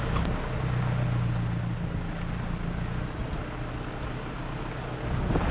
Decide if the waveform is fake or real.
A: real